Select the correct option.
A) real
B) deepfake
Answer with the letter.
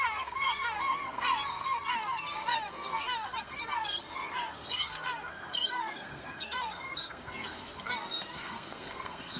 B